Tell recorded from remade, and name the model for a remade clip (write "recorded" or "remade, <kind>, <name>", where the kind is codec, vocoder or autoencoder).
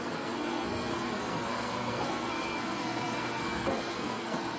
remade, codec, SNAC